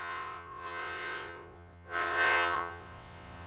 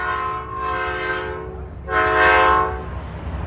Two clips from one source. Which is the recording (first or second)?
second